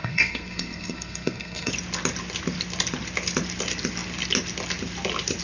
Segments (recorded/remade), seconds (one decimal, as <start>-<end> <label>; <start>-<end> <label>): 0.0-1.7 remade; 1.7-5.4 recorded